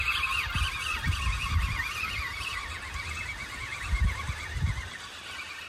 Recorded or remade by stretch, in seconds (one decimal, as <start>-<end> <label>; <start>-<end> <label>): 0.0-5.7 recorded